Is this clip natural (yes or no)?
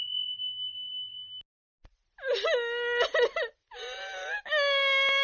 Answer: yes